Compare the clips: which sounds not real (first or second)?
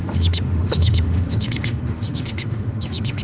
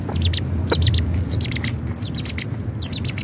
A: first